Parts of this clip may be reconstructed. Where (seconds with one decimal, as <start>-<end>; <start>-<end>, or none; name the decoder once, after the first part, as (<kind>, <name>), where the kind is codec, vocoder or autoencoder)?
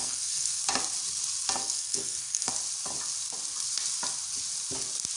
0.0-0.6 (codec, SNAC); 1.6-2.5